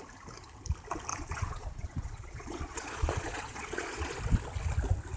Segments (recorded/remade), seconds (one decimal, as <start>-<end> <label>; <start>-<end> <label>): 0.0-1.1 recorded; 1.1-4.2 remade; 4.2-5.2 recorded